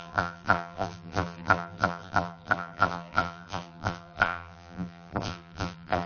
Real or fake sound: fake